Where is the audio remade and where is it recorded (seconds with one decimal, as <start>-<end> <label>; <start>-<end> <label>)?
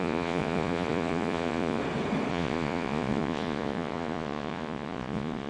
0.0-1.8 remade; 1.8-2.3 recorded; 2.3-5.5 remade